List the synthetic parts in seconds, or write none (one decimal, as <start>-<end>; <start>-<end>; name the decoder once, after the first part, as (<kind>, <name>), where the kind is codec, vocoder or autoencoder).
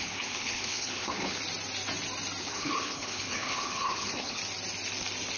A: 0.0-1.4 (codec, HILCodec); 2.4-4.4